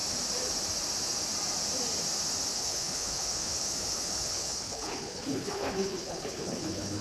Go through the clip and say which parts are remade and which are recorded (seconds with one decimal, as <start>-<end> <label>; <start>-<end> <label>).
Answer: 0.0-2.5 recorded; 2.5-7.0 remade

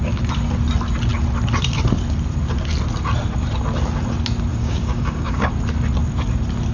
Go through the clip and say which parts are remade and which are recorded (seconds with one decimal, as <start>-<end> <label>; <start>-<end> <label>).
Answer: 0.0-4.5 recorded; 4.5-5.5 remade; 5.5-6.7 recorded

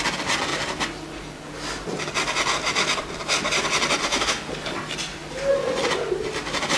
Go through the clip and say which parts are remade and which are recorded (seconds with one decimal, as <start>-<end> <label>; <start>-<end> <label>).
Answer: 0.0-4.0 recorded; 4.0-4.5 remade; 4.5-6.8 recorded

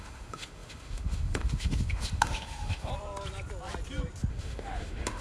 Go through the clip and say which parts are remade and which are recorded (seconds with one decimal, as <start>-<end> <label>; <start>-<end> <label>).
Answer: 0.0-2.9 remade; 2.9-4.3 recorded; 4.3-5.2 remade

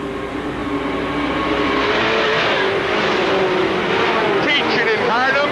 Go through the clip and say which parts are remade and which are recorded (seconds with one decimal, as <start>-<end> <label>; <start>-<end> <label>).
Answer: 0.0-5.5 recorded

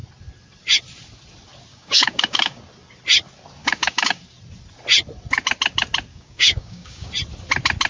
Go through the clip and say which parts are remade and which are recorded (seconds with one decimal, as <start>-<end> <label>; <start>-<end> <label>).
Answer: 0.0-1.7 recorded; 1.7-2.6 remade; 2.6-3.6 recorded; 3.6-4.2 remade; 4.2-6.1 recorded; 6.1-7.1 remade; 7.1-7.9 recorded

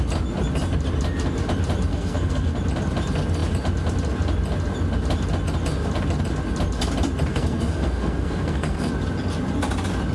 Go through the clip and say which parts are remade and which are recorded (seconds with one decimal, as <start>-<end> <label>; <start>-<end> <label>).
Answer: 0.0-1.9 recorded; 1.9-2.5 remade; 2.5-7.3 recorded; 7.3-8.9 remade; 8.9-10.1 recorded